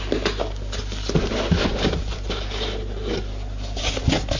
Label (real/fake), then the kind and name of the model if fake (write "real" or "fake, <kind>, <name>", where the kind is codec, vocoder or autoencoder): real